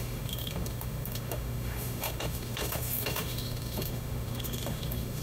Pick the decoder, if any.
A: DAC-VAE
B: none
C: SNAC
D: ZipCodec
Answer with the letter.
A